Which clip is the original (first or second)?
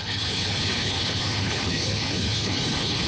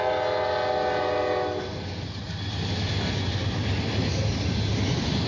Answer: second